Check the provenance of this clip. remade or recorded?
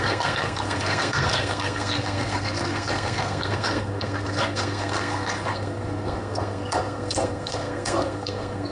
remade